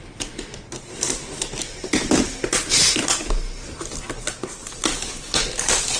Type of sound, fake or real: real